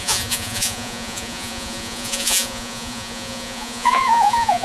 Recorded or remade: remade